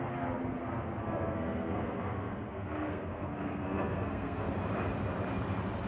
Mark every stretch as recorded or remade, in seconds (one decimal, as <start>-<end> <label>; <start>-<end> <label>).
0.0-1.0 recorded; 1.0-4.5 remade; 4.5-5.9 recorded